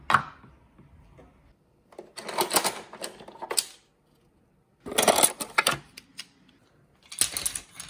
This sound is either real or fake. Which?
real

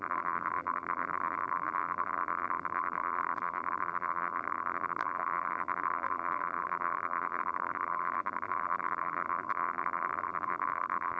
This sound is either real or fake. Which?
fake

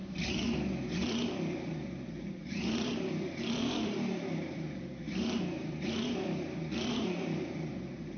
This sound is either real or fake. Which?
fake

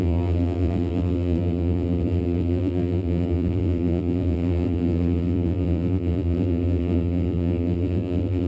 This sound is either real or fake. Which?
fake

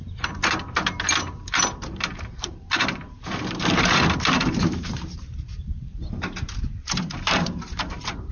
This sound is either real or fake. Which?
fake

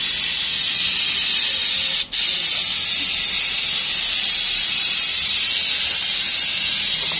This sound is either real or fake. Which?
real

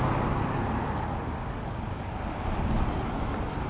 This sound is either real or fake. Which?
fake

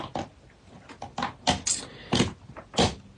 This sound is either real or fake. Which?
real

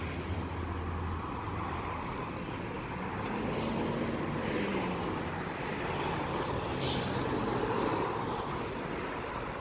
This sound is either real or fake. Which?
real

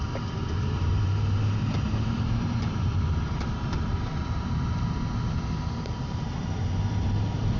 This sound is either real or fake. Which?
fake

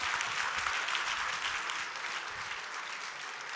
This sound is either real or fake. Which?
real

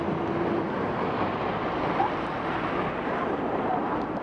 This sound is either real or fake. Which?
fake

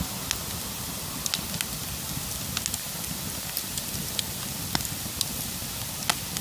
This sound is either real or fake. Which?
real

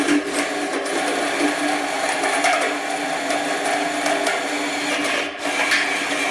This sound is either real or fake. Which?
real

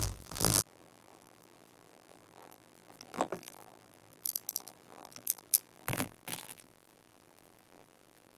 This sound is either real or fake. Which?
fake